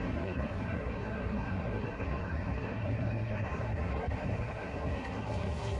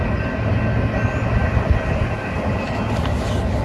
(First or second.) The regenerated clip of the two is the first